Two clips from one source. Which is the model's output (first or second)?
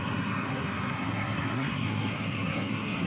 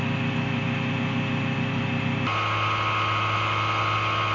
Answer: first